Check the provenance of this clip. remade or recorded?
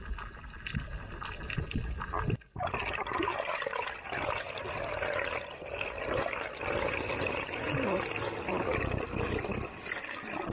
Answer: recorded